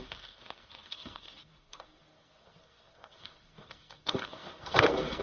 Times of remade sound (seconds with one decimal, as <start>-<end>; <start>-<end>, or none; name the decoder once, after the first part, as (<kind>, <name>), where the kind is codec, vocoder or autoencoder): 0.0-5.2 (codec, SNAC)